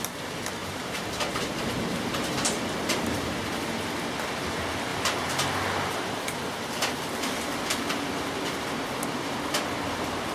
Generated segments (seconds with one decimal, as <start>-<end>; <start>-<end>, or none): 0.6-3.3